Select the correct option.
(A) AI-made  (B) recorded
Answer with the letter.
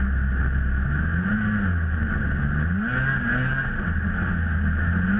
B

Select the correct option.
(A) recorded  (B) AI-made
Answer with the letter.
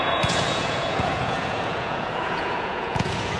B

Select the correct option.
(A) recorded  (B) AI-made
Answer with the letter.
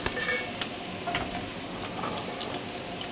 A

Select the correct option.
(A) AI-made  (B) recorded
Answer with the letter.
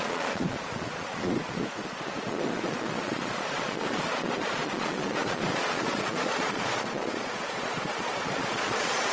A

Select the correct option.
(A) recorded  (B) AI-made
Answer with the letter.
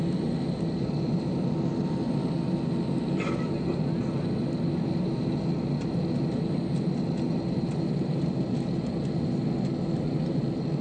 A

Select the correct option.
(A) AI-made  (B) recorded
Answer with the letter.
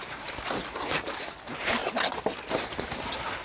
B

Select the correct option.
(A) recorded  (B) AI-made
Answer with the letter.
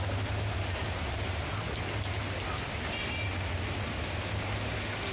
A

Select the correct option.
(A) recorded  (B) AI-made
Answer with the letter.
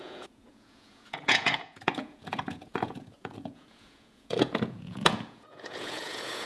B